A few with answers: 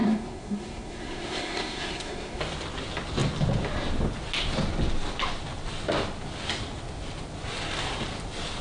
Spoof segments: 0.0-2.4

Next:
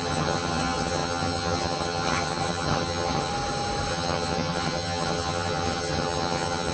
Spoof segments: 0.0-3.3; 3.9-6.7